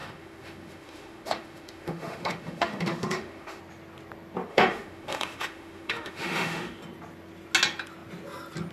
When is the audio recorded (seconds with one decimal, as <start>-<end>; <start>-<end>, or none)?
3.6-4.5; 6.8-8.7